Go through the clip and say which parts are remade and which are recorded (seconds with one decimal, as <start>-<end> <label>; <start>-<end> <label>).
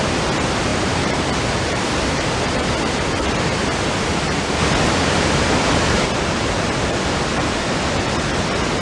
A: 0.0-0.7 recorded; 0.7-2.7 remade; 2.7-8.8 recorded